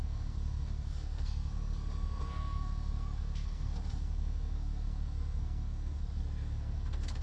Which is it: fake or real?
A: fake